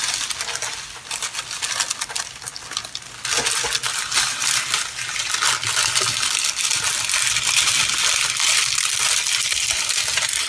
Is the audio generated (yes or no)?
no